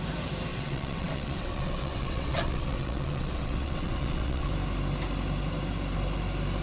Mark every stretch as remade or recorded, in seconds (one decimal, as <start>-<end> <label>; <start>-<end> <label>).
0.0-0.5 recorded; 0.5-4.5 remade; 4.5-6.6 recorded